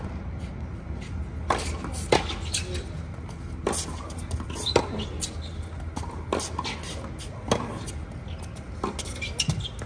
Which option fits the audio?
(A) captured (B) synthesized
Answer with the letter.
A